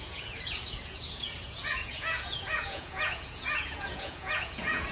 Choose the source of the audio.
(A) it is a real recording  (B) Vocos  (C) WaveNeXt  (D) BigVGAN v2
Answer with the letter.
B